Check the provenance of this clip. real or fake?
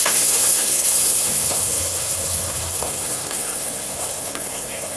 fake